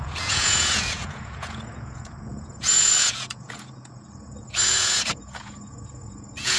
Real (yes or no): no